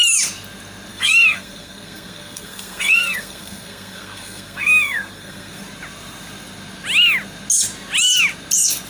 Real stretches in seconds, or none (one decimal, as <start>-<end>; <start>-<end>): 0.0-0.9; 5.6-8.9